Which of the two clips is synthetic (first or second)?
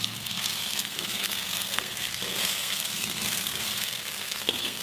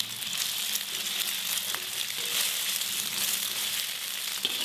first